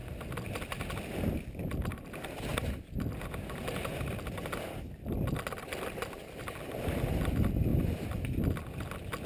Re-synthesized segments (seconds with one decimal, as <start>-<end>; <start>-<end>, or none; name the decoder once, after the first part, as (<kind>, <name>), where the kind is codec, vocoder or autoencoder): 0.0-0.5 (vocoder, BigVGAN v2)